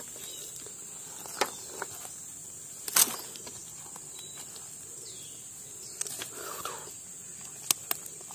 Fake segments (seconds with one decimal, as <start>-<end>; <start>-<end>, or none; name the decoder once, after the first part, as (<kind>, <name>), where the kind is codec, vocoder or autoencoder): none

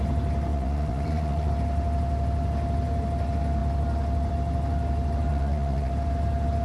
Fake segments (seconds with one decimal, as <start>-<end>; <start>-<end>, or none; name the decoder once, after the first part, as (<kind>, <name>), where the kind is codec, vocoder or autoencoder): 0.5-1.5 (vocoder, Vocos); 5.3-5.9

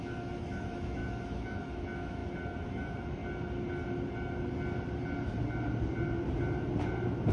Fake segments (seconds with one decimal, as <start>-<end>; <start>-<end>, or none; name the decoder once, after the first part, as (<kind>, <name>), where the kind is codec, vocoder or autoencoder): 0.0-2.2 (autoencoder, DAC-VAE); 2.7-3.2